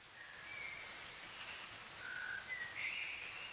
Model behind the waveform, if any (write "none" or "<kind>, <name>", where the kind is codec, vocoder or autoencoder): none